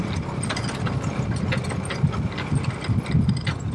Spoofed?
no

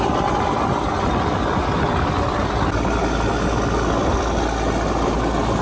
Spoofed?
no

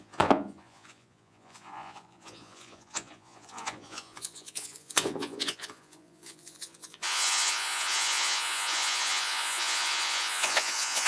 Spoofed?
yes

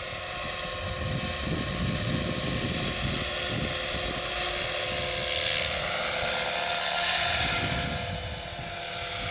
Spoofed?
no